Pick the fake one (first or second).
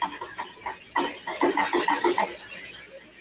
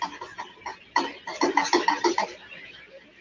second